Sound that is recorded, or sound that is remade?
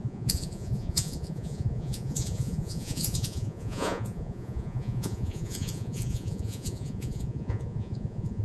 remade